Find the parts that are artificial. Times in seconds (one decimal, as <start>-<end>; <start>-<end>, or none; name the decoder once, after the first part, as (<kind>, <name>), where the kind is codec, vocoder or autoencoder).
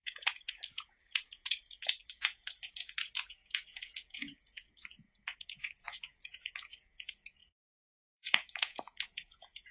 0.0-9.7 (vocoder, Vocos)